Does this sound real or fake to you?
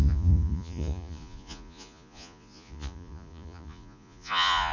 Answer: fake